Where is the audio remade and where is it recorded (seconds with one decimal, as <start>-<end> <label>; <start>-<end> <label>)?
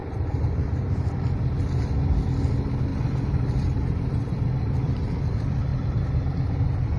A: 0.0-1.1 remade; 1.1-2.9 recorded; 2.9-5.2 remade; 5.2-7.0 recorded